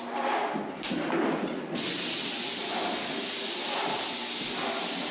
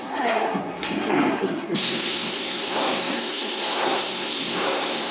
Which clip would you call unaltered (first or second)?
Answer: first